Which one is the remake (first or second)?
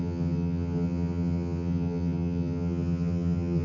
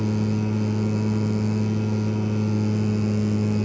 first